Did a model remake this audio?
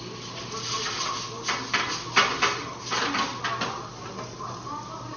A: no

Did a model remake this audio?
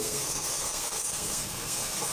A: yes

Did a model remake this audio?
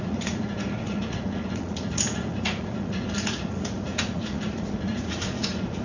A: yes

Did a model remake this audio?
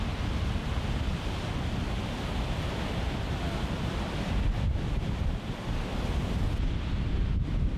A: no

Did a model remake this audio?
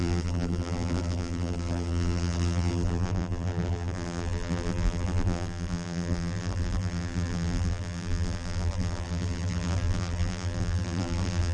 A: yes